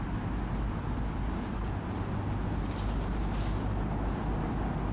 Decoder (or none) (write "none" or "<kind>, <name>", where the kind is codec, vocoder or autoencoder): none